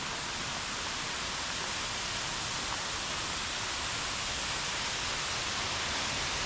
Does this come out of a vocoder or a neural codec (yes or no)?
no